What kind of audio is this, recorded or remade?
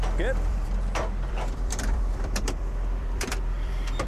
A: remade